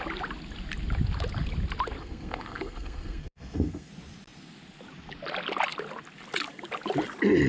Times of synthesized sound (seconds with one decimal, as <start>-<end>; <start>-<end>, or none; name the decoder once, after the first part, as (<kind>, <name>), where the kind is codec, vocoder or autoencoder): 2.0-3.9 (codec, SNAC)